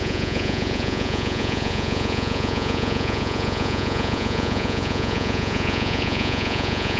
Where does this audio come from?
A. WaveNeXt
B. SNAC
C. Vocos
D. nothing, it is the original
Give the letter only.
C